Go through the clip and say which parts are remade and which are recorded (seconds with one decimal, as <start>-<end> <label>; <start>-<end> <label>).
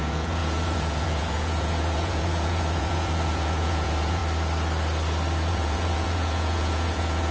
0.0-4.2 remade; 4.2-5.5 recorded; 5.5-7.3 remade